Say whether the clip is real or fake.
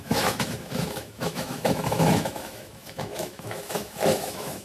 fake